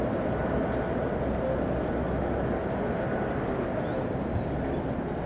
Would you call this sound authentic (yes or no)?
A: yes